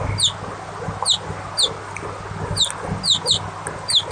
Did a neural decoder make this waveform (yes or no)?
no